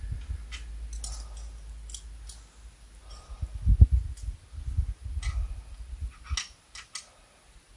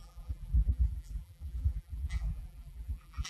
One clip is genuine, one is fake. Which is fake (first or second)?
second